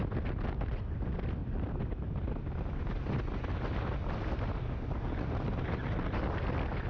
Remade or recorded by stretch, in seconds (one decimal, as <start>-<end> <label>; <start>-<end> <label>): 0.0-6.9 recorded